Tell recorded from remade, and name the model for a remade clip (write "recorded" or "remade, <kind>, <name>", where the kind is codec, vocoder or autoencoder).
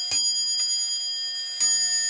recorded